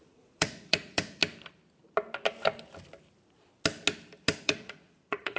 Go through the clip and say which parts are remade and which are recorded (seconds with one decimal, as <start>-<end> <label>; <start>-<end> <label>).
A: 0.0-1.2 remade; 1.2-4.4 recorded; 4.4-5.4 remade